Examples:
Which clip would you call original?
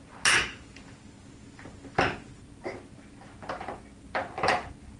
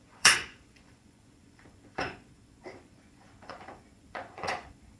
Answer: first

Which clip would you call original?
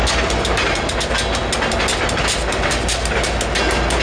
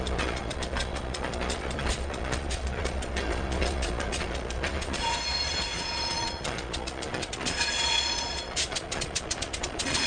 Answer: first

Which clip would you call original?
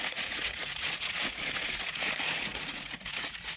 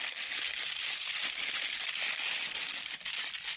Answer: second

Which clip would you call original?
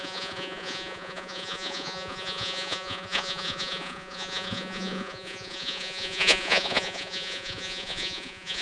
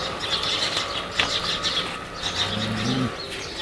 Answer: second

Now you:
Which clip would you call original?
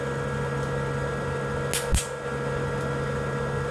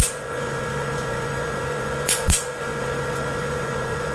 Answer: first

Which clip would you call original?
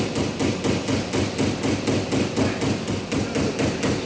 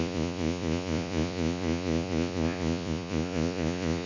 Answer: first